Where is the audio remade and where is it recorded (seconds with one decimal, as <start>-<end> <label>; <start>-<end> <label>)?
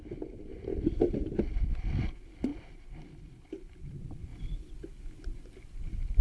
0.0-2.5 recorded; 2.5-3.9 remade; 3.9-6.2 recorded